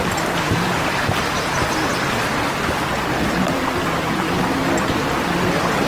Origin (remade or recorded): recorded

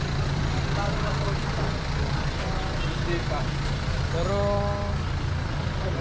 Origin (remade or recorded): recorded